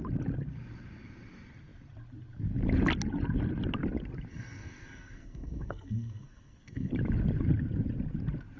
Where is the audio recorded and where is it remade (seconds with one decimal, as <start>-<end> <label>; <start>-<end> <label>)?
0.0-4.3 recorded; 4.3-6.9 remade; 6.9-8.6 recorded